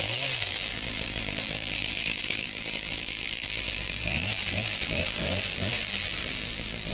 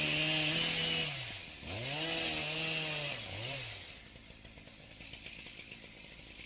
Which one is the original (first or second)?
second